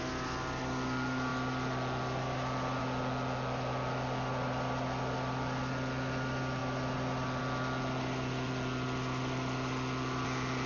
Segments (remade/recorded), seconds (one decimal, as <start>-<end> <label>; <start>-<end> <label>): 0.0-10.7 recorded